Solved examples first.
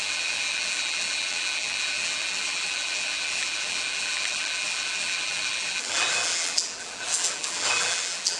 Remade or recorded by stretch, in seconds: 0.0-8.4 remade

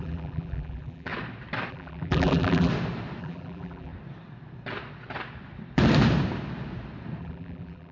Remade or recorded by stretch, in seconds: 0.0-1.1 remade; 1.1-1.7 recorded; 1.7-2.7 remade; 2.7-3.2 recorded; 3.2-3.9 remade; 3.9-7.2 recorded; 7.2-7.9 remade

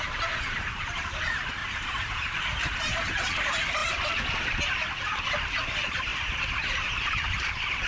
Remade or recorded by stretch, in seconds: 0.0-1.6 recorded; 1.6-2.4 remade; 2.4-6.1 recorded; 6.1-7.5 remade; 7.5-7.9 recorded

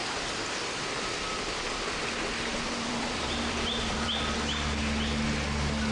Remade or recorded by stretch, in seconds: 0.0-2.5 recorded; 2.5-4.1 remade; 4.1-5.9 recorded